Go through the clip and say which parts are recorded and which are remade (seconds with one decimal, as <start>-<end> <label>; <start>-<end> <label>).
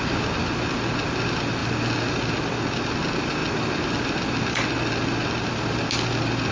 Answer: 0.0-6.5 recorded